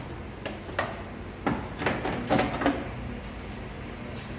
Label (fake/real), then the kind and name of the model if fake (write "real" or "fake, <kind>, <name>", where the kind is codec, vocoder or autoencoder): real